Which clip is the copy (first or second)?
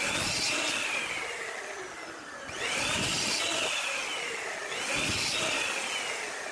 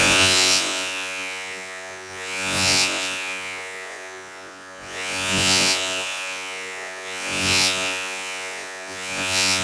second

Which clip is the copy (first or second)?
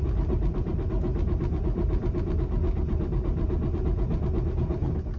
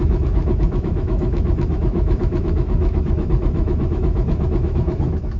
second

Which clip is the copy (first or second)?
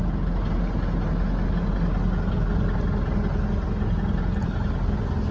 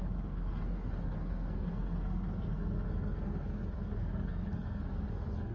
second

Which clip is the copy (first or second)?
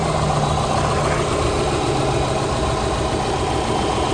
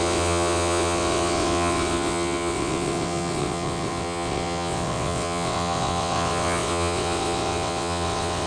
second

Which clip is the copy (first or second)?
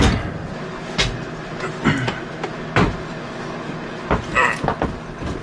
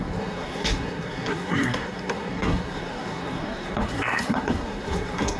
second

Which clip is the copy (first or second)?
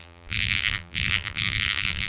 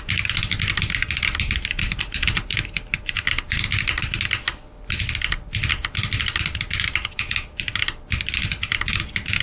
first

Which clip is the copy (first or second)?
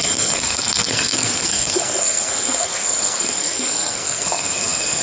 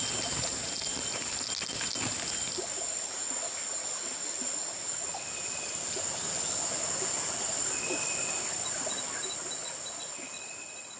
first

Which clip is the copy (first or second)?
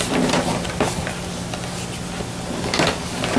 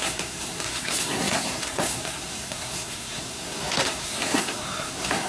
second